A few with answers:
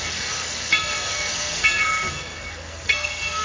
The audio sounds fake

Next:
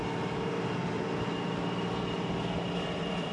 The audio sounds real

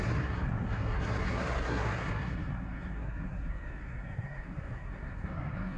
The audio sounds fake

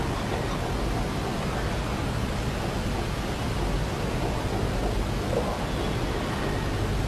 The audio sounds real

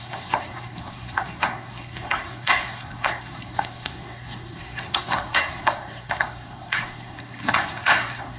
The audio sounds fake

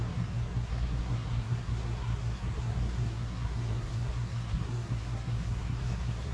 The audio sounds fake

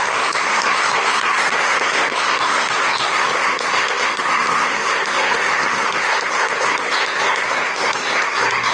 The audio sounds fake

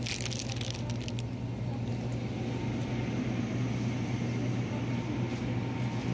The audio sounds real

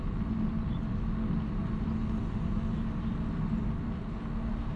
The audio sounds real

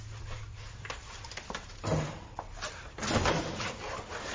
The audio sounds real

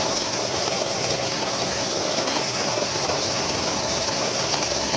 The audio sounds fake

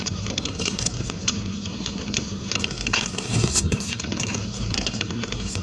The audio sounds fake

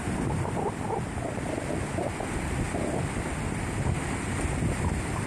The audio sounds real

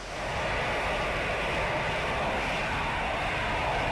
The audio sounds real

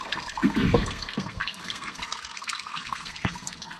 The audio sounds fake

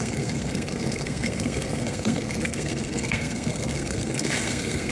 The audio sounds fake